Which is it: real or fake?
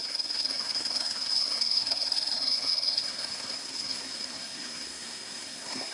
fake